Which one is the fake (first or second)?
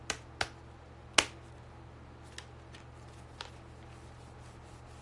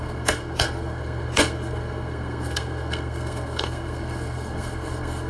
second